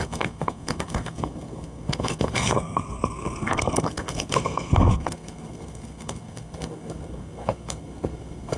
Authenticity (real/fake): fake